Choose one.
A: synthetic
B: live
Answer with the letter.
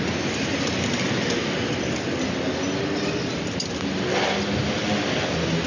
B